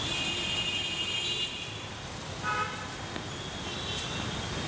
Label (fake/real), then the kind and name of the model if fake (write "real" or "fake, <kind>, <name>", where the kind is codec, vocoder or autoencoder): real